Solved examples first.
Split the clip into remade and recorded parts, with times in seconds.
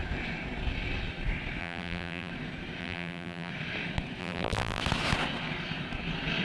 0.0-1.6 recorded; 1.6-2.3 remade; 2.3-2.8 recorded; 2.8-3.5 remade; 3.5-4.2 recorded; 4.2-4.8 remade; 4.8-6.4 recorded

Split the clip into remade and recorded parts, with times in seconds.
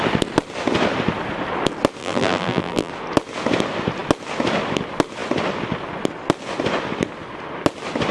0.0-2.0 recorded; 2.0-2.9 remade; 2.9-8.1 recorded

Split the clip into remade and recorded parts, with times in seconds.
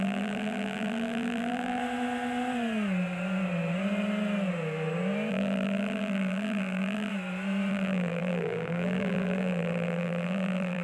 0.0-1.8 remade; 1.8-5.3 recorded; 5.3-7.1 remade; 7.1-7.7 recorded; 7.7-10.8 remade